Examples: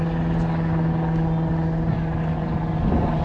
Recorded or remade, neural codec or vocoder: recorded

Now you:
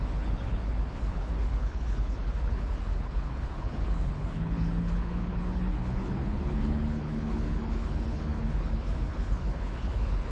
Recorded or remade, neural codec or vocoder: remade, codec, HILCodec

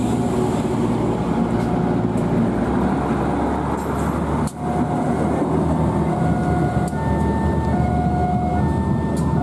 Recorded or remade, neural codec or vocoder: recorded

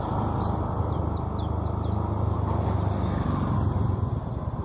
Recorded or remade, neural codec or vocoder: recorded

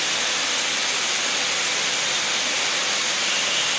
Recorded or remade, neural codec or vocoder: recorded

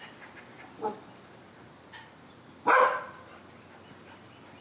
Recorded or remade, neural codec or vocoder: recorded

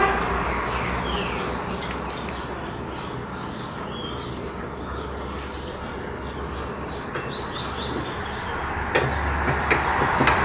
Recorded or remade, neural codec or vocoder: recorded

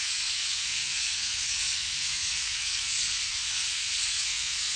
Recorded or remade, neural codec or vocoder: remade, codec, SNAC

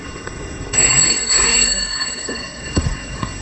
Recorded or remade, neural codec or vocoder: remade, codec, SNAC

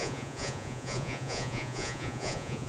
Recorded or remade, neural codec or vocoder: remade, vocoder, Vocos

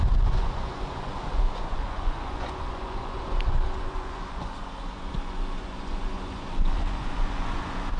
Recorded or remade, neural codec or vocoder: remade, vocoder, Vocos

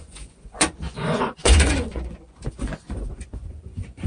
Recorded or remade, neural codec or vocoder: remade, vocoder, Vocos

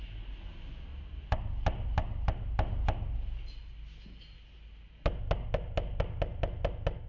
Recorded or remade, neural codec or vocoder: recorded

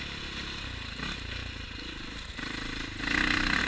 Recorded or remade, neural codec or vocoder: recorded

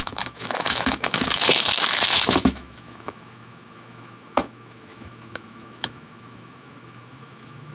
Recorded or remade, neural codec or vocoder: remade, autoencoder, DAC-VAE